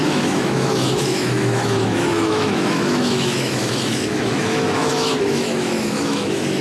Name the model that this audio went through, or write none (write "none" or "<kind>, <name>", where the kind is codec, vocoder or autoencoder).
autoencoder, DAC-VAE